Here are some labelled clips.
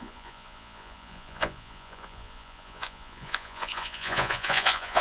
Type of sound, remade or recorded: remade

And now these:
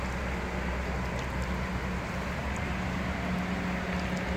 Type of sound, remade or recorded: recorded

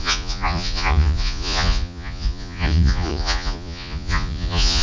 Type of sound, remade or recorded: remade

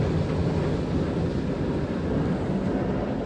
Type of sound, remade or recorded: recorded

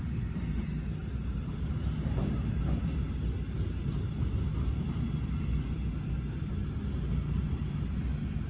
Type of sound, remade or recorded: recorded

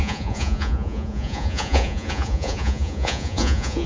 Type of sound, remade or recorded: remade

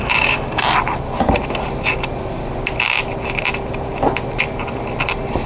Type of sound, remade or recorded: recorded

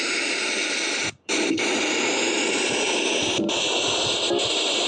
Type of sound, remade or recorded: recorded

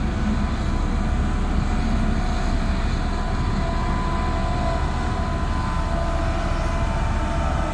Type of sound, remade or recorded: recorded